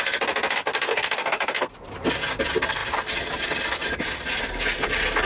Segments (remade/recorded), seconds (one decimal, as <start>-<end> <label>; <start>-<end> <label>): 0.0-0.9 recorded; 0.9-1.7 remade; 1.7-5.3 recorded